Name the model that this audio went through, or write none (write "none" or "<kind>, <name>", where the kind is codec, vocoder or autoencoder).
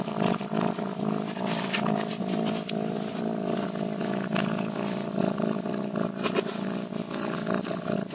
none